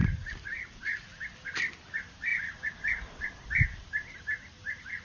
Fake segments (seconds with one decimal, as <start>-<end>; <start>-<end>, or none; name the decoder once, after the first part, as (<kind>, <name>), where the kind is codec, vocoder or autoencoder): 0.0-5.0 (vocoder, BigVGAN v2)